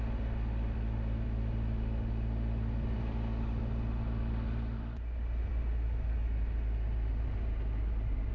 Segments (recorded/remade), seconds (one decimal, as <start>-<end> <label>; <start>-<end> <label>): 0.0-8.3 recorded